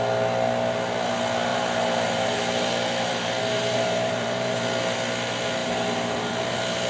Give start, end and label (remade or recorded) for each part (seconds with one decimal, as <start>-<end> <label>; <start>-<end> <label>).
0.0-1.5 recorded; 1.5-4.6 remade; 4.6-5.6 recorded; 5.6-6.4 remade; 6.4-6.9 recorded